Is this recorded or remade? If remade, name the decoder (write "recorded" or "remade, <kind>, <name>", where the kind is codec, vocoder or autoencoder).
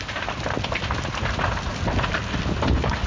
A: recorded